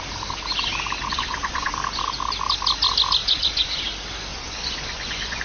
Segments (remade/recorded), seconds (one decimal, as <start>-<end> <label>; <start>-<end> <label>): 0.0-1.0 recorded; 1.0-1.7 remade; 1.7-3.2 recorded; 3.2-3.8 remade; 3.8-4.3 recorded; 4.3-5.4 remade